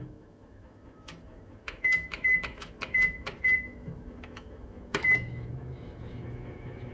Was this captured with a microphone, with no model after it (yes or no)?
no